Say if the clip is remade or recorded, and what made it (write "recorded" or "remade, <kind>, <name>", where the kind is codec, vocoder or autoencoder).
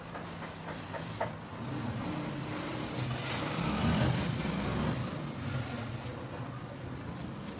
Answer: recorded